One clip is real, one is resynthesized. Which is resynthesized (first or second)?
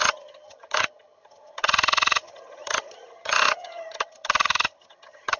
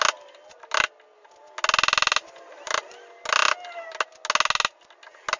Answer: first